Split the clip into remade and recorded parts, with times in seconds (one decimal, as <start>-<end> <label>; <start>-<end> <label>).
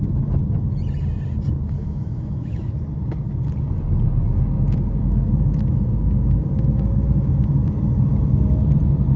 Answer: 0.0-1.8 recorded; 1.8-2.7 remade; 2.7-9.2 recorded